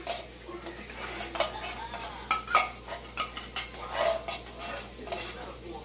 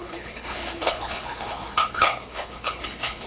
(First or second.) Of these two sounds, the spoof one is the second